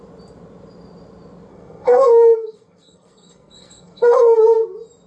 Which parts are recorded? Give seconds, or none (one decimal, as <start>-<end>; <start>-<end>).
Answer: 0.0-1.5; 4.4-5.1